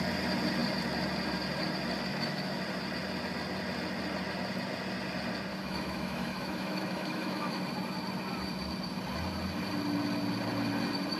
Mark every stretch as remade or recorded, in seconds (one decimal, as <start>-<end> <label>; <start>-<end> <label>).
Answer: 0.0-2.1 recorded; 2.1-2.6 remade; 2.6-5.5 recorded; 5.5-7.6 remade; 7.6-11.2 recorded